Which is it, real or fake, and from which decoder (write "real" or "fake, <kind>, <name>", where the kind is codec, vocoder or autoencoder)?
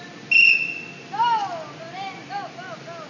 real